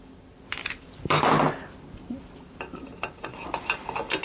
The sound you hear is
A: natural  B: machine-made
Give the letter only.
A